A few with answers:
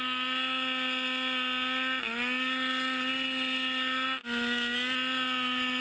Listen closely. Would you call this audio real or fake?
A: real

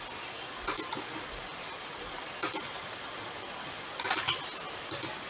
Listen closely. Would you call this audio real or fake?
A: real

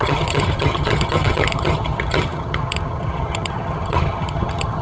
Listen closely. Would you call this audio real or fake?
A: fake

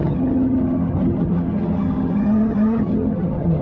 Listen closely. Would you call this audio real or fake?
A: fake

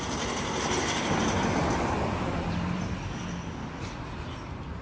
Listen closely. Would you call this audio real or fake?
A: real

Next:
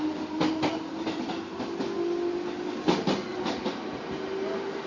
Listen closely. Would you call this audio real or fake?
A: real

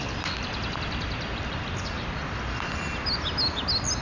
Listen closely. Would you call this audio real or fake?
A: real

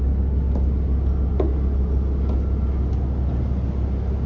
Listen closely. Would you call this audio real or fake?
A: real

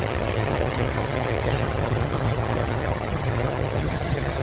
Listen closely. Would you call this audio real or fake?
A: fake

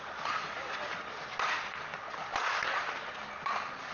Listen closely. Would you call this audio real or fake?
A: real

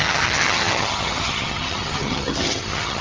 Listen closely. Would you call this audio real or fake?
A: fake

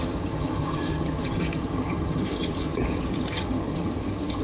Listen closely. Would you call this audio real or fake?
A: fake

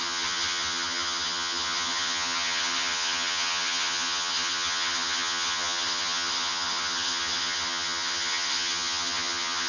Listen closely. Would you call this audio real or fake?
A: fake